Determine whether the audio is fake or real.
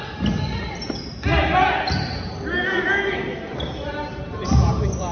real